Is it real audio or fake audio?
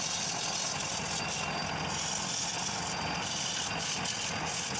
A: real